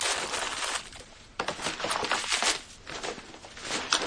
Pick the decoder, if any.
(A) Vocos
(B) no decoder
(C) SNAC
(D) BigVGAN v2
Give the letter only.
B